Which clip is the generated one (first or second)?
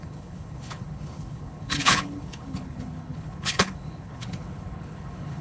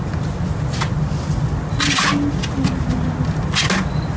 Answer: first